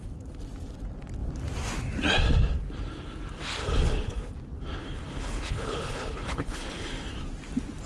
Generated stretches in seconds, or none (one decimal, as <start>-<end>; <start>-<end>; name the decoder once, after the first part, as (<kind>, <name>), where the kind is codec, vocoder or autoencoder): 3.6-4.3 (codec, HILCodec); 4.8-7.1